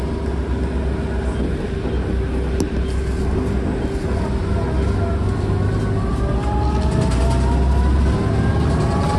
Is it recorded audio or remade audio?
recorded